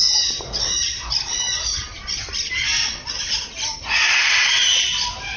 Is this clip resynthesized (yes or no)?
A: no